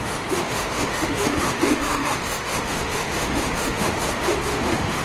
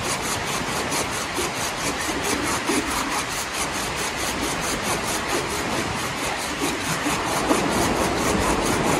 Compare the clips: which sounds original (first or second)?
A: second